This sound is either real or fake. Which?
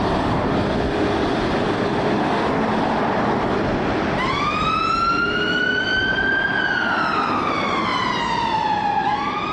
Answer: real